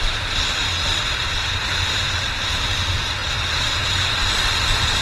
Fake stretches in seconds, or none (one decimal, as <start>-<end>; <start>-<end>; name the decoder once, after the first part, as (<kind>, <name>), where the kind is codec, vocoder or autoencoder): none